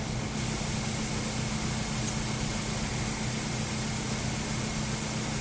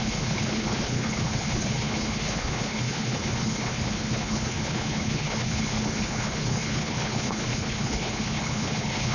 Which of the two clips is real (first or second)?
first